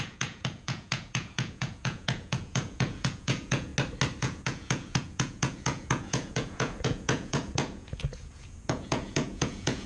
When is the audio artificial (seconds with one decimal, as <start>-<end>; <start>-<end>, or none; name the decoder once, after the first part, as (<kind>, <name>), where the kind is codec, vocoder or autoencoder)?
0.0-3.7 (vocoder, Vocos); 4.2-9.9